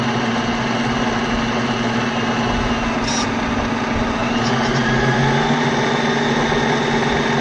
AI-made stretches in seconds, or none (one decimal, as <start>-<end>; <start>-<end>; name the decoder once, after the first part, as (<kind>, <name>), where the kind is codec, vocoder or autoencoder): 4.2-5.8 (vocoder, BigVGAN v2)